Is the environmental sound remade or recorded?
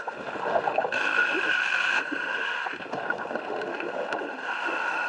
remade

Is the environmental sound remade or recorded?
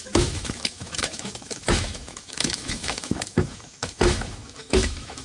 remade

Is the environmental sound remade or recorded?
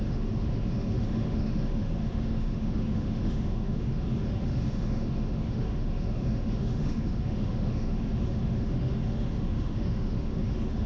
remade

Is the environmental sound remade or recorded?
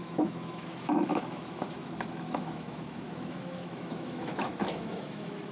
remade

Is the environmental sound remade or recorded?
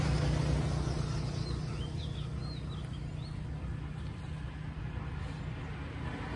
recorded